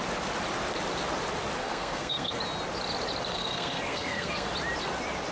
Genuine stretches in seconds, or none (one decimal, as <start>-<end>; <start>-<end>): 0.0-1.6; 2.4-3.3; 4.5-5.3